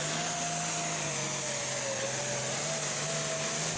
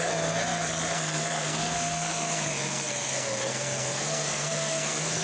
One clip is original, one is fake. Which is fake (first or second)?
second